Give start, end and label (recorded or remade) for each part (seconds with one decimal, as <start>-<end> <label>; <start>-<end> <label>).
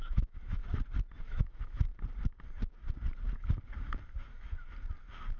0.0-0.6 remade; 0.6-1.2 recorded; 1.2-1.9 remade; 1.9-5.4 recorded